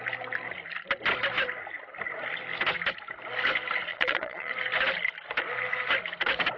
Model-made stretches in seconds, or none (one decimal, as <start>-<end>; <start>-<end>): 3.9-4.5